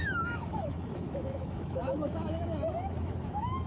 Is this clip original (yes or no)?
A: no